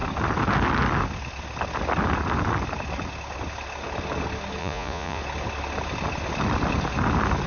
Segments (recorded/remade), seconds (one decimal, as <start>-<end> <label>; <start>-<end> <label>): 0.0-4.6 recorded; 4.6-5.2 remade; 5.2-7.5 recorded